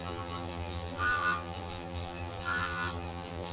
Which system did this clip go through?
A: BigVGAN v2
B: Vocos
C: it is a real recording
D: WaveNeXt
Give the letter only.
A